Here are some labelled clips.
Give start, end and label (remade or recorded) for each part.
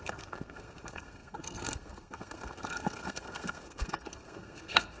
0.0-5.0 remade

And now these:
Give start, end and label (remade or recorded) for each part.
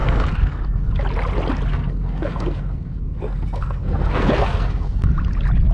0.0-0.9 remade; 0.9-1.7 recorded; 1.7-5.1 remade; 5.1-5.7 recorded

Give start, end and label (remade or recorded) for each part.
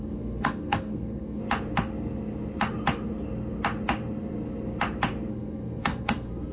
0.0-1.4 remade; 1.4-5.3 recorded; 5.3-6.5 remade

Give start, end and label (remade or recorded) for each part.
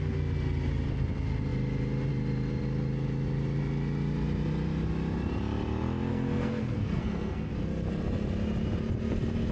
0.0-6.1 recorded; 6.1-7.5 remade; 7.5-9.5 recorded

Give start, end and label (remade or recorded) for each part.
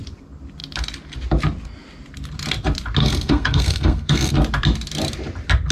0.0-3.0 recorded; 3.0-4.3 remade; 4.3-5.7 recorded